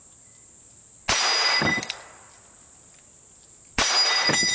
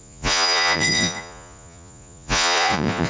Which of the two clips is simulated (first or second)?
second